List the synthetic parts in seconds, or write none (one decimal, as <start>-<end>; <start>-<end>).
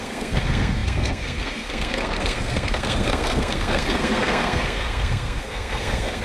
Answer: 0.0-6.2